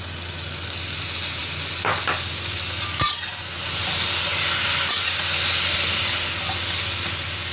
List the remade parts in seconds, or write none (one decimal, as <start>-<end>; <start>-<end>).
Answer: none